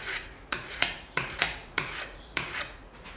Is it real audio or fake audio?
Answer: fake